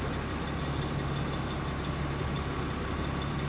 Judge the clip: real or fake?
real